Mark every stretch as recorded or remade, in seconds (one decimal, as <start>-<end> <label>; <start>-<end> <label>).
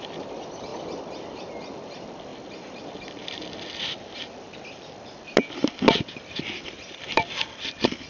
0.0-0.7 remade; 0.7-1.6 recorded; 1.6-2.3 remade; 2.3-6.6 recorded; 6.6-8.1 remade